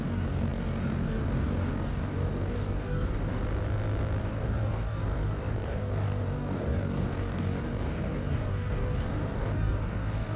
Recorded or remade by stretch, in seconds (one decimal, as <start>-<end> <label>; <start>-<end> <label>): 0.0-3.4 remade; 3.4-4.2 recorded; 4.2-10.4 remade